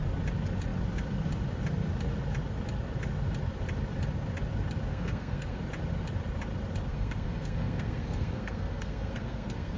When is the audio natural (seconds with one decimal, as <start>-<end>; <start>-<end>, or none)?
0.0-4.9; 5.6-6.9